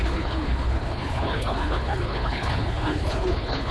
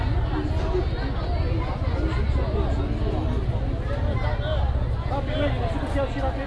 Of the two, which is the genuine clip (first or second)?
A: second